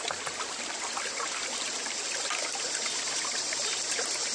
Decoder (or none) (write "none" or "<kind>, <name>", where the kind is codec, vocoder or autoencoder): none